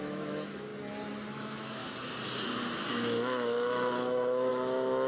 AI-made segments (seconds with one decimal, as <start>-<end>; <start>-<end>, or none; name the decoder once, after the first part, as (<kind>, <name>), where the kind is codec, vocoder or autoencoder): 0.0-0.7 (autoencoder, DAC-VAE); 1.3-1.8; 2.9-5.1